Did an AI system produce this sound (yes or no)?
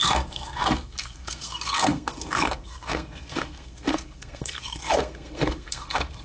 yes